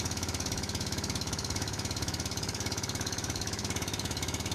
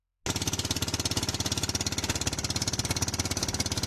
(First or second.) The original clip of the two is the second